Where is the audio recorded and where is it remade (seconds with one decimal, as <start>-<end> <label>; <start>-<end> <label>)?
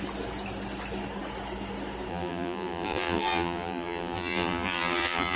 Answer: 0.0-2.1 recorded; 2.1-5.4 remade